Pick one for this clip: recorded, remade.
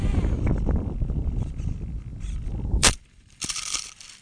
remade